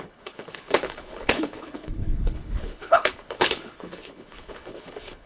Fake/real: fake